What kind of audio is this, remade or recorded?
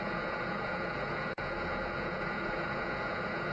remade